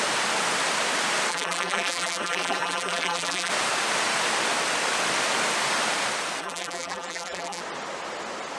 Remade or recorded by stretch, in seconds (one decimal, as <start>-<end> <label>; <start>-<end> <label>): 0.0-1.3 recorded; 1.3-3.5 remade; 3.5-6.4 recorded; 6.4-7.6 remade; 7.6-8.6 recorded